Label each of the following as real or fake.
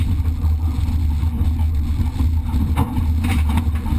real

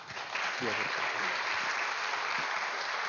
real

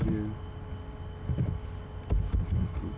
real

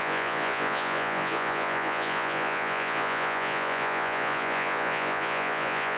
fake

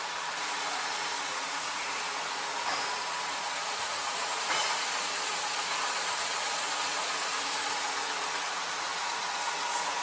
fake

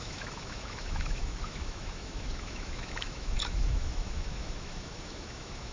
fake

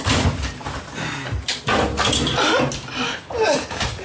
real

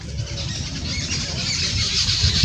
real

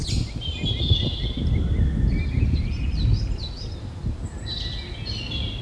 real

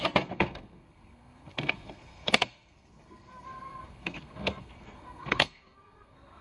fake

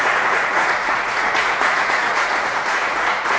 fake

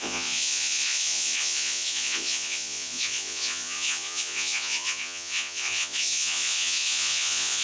fake